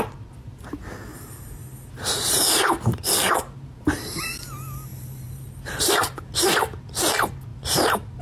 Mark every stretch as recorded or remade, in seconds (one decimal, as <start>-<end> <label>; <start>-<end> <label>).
0.0-1.1 recorded; 1.1-4.2 remade; 4.2-4.9 recorded; 4.9-6.8 remade; 6.8-7.5 recorded; 7.5-8.2 remade